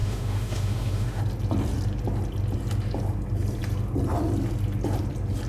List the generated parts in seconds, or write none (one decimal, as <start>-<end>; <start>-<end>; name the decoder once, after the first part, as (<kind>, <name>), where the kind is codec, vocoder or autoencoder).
0.0-1.2 (autoencoder, DAC-VAE)